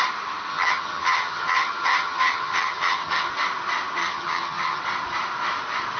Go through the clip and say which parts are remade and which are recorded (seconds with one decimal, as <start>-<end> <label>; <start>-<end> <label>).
0.0-0.5 recorded; 0.5-3.3 remade; 3.3-4.0 recorded; 4.0-4.8 remade; 4.8-6.0 recorded